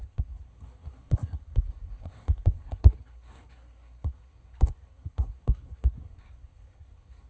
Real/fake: fake